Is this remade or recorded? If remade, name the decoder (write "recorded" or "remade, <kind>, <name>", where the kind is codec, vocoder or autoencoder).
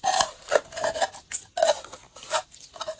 recorded